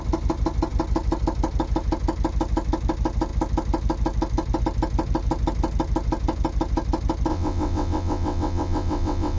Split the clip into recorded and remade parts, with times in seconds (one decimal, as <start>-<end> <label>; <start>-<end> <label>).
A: 0.0-7.3 recorded; 7.3-9.4 remade